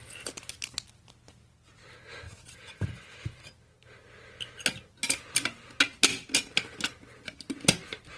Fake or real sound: real